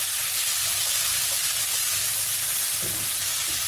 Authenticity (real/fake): real